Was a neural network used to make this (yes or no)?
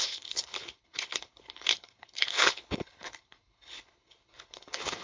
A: yes